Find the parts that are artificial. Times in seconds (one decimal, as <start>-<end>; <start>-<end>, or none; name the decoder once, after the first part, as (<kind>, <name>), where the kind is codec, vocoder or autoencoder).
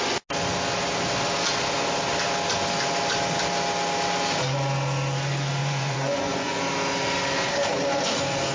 5.6-6.6 (vocoder, Vocos)